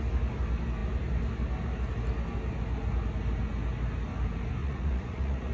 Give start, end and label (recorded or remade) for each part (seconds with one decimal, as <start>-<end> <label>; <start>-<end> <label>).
0.0-4.6 recorded; 4.6-5.5 remade